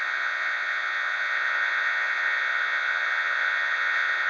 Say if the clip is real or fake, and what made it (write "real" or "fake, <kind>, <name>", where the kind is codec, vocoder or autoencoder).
fake, vocoder, Vocos